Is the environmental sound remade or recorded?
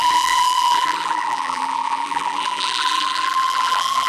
remade